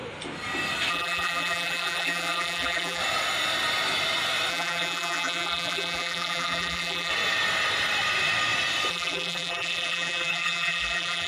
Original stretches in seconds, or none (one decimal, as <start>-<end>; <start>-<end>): 0.0-0.9; 3.0-4.5; 7.1-8.9